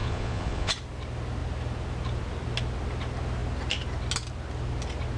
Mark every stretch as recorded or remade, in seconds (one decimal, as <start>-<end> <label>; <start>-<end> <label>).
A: 0.0-0.7 remade; 0.7-5.2 recorded